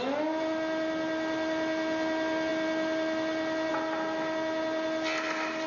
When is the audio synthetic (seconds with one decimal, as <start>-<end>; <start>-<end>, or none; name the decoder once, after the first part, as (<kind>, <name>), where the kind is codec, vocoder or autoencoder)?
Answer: none